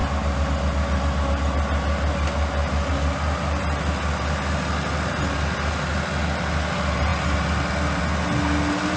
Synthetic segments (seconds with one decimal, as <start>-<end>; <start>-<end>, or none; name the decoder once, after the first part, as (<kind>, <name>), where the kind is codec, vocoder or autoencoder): none